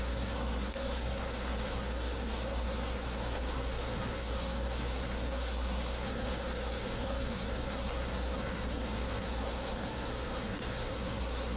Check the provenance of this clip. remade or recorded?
remade